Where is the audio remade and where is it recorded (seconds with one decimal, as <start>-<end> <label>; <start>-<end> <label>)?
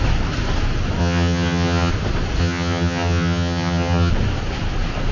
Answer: 0.0-1.0 recorded; 1.0-1.9 remade; 1.9-2.4 recorded; 2.4-4.1 remade; 4.1-5.1 recorded